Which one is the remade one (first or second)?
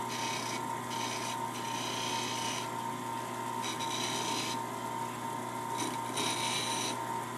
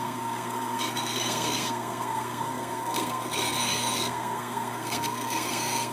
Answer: second